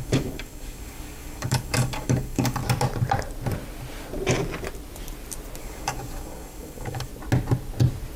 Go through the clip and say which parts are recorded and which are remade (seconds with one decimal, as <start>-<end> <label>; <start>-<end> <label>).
0.0-2.6 remade; 2.6-5.6 recorded; 5.6-7.1 remade; 7.1-8.2 recorded